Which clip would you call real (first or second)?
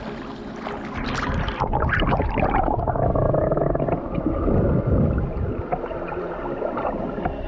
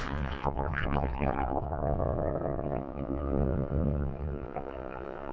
first